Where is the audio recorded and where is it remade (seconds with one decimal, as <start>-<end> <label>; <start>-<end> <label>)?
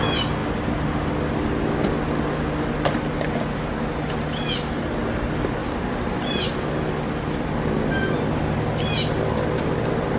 0.0-5.6 recorded; 5.6-6.6 remade; 6.6-10.2 recorded